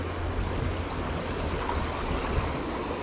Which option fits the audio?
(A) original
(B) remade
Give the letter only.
A